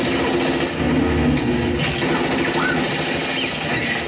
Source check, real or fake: real